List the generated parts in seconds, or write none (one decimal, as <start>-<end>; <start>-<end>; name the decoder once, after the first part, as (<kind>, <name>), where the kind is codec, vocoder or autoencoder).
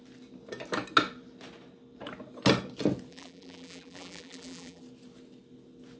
3.1-4.8 (vocoder, BigVGAN v2)